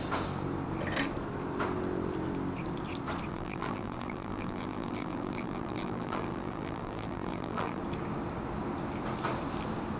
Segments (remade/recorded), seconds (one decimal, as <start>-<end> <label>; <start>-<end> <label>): 0.0-3.3 recorded; 3.3-7.8 remade; 7.8-10.0 recorded